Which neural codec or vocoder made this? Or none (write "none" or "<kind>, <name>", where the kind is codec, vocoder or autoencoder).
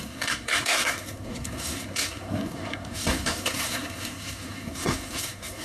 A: codec, SNAC